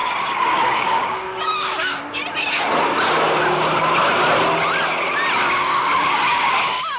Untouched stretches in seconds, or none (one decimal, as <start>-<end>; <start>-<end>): 2.2-5.4